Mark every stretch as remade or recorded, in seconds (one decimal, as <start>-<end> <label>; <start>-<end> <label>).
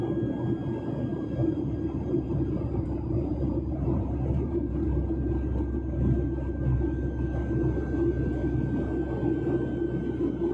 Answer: 0.0-1.1 recorded; 1.1-4.9 remade; 4.9-10.5 recorded